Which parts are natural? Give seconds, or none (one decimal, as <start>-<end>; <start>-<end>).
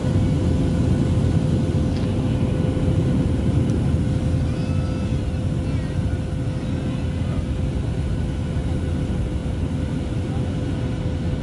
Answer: 0.0-3.0; 4.0-9.4; 10.3-11.4